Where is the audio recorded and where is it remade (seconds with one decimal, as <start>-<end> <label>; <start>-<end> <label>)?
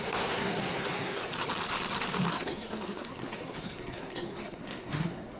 0.0-1.2 remade; 1.2-2.3 recorded; 2.3-5.4 remade